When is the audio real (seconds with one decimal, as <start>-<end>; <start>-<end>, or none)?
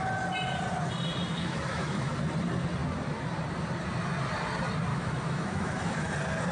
0.0-1.3; 2.1-4.9; 6.1-6.5